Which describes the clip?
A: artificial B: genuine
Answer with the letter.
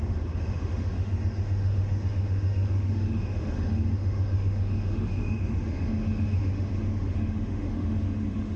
A